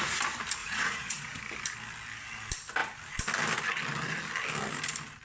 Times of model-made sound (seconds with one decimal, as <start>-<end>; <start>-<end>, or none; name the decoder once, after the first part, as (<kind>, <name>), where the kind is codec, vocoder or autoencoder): 0.6-1.4 (vocoder, Vocos)